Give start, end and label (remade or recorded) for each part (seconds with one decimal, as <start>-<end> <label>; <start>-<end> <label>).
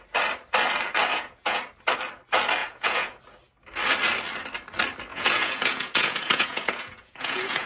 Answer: 0.0-1.1 recorded; 1.1-1.6 remade; 1.6-2.6 recorded; 2.6-3.2 remade; 3.2-5.1 recorded; 5.1-7.7 remade